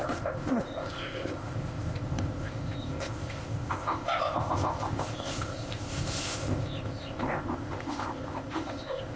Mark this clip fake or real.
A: fake